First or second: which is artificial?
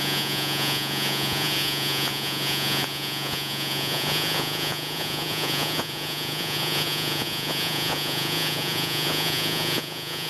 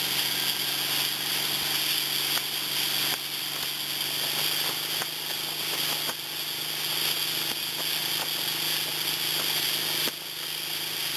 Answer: first